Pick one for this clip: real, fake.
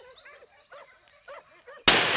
real